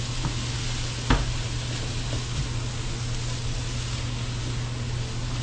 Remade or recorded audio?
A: recorded